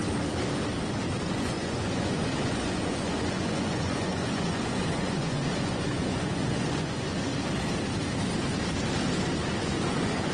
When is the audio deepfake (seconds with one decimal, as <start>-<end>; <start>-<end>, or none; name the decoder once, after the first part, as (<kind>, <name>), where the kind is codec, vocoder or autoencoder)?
1.3-7.3 (vocoder, Vocos); 9.6-10.3